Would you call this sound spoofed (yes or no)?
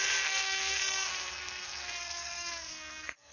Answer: yes